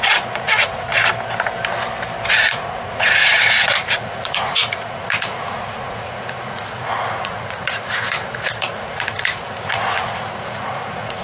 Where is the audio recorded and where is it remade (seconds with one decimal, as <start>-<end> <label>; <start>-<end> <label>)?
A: 0.0-0.9 remade; 0.9-2.3 recorded; 2.3-11.2 remade